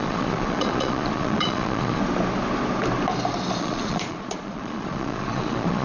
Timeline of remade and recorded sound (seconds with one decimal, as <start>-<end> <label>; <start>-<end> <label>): 0.0-2.0 remade; 2.0-3.6 recorded; 3.6-5.8 remade